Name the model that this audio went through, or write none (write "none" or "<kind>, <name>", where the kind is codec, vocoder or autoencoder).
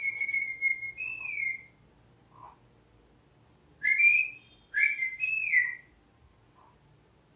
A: none